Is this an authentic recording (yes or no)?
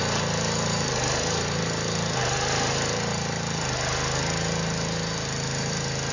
yes